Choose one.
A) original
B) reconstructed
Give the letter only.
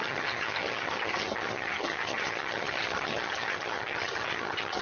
B